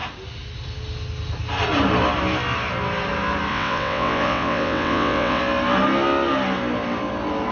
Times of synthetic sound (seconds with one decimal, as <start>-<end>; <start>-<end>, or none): 3.5-5.4